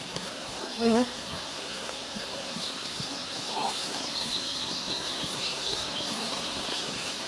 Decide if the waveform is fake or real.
fake